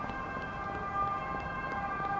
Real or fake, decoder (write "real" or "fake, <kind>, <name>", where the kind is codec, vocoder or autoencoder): real